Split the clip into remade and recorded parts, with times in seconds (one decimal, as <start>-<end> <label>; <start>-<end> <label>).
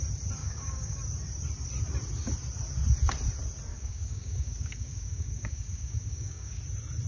0.0-0.4 recorded; 0.4-1.0 remade; 1.0-3.7 recorded; 3.7-6.6 remade; 6.6-7.1 recorded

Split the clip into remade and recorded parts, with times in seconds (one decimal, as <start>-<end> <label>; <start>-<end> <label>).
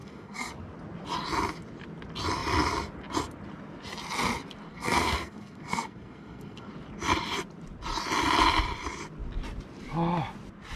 0.0-0.5 remade; 0.5-4.7 recorded; 4.7-6.7 remade; 6.7-10.8 recorded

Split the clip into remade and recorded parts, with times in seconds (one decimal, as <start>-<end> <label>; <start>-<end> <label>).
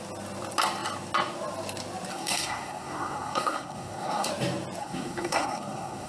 0.0-2.1 recorded; 2.1-4.3 remade; 4.3-4.8 recorded; 4.8-6.1 remade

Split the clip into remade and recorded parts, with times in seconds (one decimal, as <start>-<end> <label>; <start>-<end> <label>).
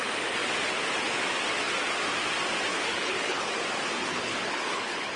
0.0-2.7 recorded; 2.7-3.5 remade; 3.5-4.1 recorded; 4.1-5.2 remade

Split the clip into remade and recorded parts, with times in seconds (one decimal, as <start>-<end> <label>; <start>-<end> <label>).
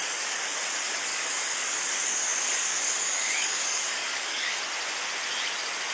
0.0-0.5 remade; 0.5-1.1 recorded; 1.1-4.6 remade; 4.6-5.9 recorded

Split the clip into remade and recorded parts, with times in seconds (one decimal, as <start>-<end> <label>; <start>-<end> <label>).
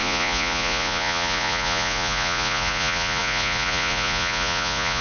0.0-5.0 remade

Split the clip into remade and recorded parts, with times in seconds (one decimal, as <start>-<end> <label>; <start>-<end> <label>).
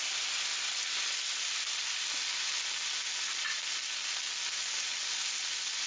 0.0-0.5 recorded; 0.5-2.6 remade; 2.6-4.9 recorded; 4.9-5.4 remade; 5.4-5.9 recorded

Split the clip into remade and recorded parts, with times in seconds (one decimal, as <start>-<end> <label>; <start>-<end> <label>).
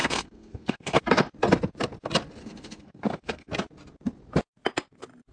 0.0-1.0 remade; 1.0-2.4 recorded; 2.4-3.5 remade; 3.5-5.3 recorded